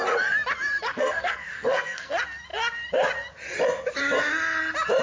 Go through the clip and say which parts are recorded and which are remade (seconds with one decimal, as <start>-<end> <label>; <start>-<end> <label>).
0.0-0.9 recorded; 0.9-2.1 remade; 2.1-5.0 recorded